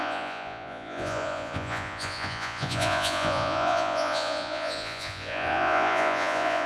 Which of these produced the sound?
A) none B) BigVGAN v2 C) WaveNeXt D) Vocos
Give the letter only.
D